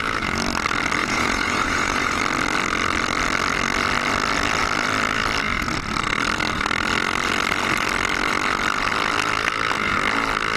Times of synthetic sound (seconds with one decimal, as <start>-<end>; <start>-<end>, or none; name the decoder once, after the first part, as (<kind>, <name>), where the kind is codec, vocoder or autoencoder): 1.0-2.2 (vocoder, Vocos)